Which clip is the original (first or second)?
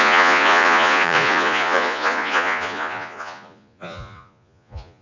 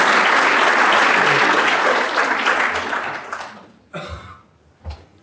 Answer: second